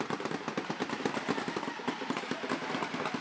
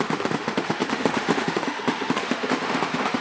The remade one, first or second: second